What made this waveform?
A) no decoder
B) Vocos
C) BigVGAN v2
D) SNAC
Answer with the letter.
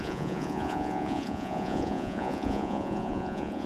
B